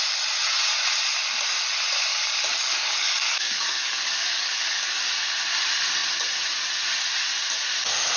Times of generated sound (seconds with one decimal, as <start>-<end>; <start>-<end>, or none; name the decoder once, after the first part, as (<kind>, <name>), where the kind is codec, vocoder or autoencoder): 2.1-5.1 (codec, DAC)